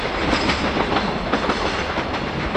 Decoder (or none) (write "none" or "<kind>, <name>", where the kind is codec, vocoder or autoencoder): vocoder, BigVGAN v2